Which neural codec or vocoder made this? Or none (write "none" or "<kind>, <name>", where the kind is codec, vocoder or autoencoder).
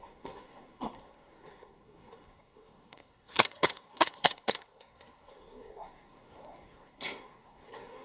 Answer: codec, SNAC